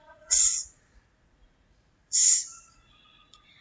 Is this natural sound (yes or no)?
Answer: no